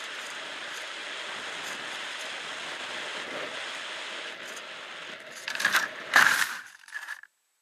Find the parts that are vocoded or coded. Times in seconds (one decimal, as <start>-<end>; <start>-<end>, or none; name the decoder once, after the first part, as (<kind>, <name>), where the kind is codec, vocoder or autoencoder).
0.0-1.0 (vocoder, BigVGAN v2); 5.4-7.6